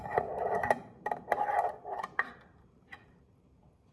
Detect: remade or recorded recorded